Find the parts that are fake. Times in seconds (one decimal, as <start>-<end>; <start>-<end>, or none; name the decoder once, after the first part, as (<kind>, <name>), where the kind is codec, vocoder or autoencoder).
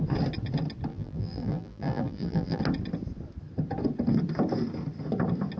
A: 0.9-2.6 (vocoder, BigVGAN v2)